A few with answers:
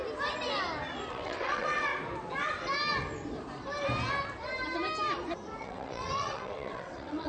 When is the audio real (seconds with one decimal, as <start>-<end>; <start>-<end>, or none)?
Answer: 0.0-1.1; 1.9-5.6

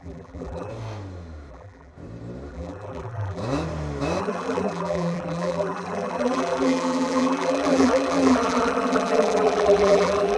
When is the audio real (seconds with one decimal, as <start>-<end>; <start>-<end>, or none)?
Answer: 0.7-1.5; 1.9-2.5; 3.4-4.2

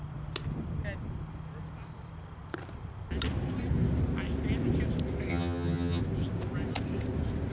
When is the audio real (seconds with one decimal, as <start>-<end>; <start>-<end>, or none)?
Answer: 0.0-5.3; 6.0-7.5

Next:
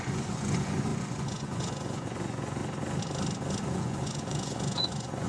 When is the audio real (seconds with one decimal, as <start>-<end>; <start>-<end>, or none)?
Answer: 2.6-3.6